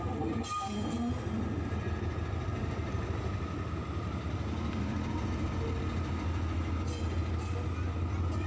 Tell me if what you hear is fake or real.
real